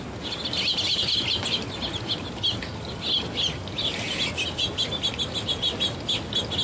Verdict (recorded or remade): recorded